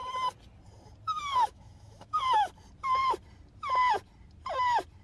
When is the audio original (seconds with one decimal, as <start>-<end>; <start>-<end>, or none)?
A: 0.0-1.3; 2.1-5.0